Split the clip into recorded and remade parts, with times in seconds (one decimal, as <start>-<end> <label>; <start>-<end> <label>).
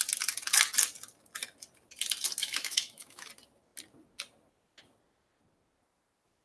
0.0-2.4 recorded; 2.4-3.3 remade; 3.3-6.4 recorded